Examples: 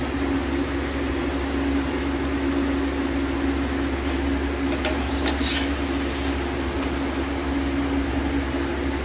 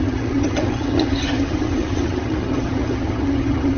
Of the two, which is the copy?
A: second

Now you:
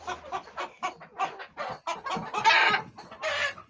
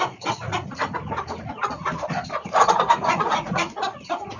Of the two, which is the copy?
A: second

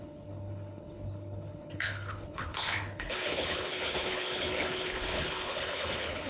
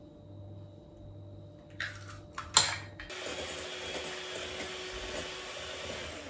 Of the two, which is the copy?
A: first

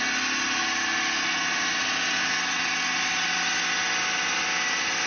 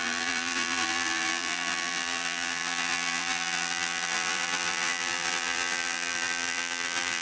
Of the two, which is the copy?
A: second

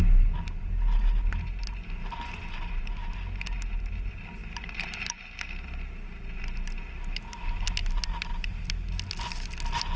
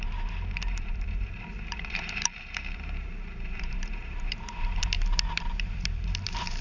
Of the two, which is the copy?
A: second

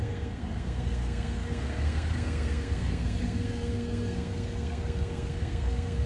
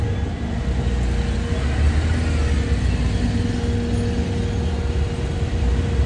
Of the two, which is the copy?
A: first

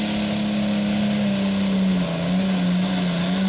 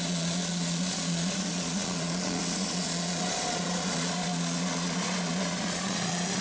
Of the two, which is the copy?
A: second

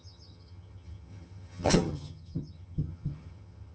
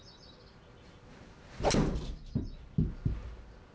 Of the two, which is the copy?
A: first